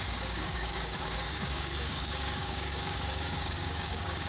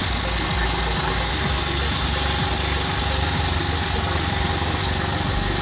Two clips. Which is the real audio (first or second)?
second